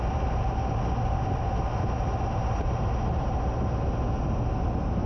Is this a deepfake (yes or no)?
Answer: no